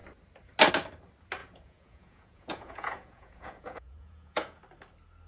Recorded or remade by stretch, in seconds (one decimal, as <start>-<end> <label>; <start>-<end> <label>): 0.0-1.4 recorded; 1.4-4.6 remade; 4.6-5.3 recorded

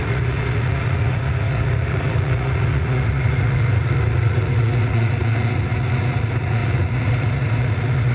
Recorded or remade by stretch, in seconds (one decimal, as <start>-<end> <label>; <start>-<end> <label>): 0.0-8.1 remade

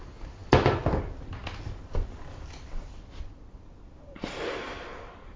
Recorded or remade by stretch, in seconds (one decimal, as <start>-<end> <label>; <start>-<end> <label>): 0.0-5.4 recorded

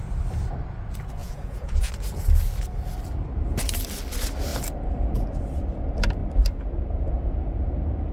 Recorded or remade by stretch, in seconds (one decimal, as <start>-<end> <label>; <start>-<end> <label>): 0.0-1.2 recorded; 1.2-1.9 remade; 1.9-8.1 recorded

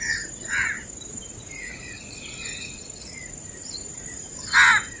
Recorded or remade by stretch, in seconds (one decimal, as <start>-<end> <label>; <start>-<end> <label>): 0.0-1.3 recorded; 1.3-4.3 remade; 4.3-5.0 recorded

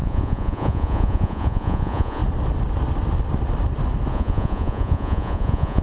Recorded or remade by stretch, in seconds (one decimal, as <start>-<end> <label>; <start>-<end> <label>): 0.0-2.2 remade; 2.2-4.1 recorded; 4.1-5.8 remade